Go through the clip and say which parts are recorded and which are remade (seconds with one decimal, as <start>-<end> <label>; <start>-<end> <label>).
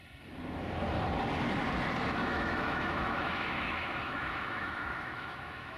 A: 0.0-2.2 recorded; 2.2-5.8 remade